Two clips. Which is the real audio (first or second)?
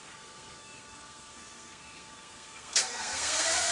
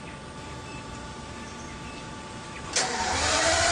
second